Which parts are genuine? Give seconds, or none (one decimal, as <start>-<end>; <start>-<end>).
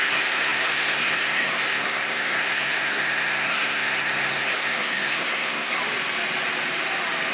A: 5.8-7.3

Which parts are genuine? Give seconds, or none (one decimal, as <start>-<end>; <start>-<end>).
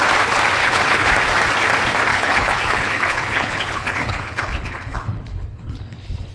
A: 0.0-0.6; 1.1-2.1